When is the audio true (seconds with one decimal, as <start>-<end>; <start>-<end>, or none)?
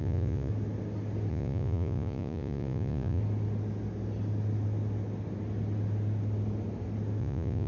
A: 0.5-1.3; 3.2-7.2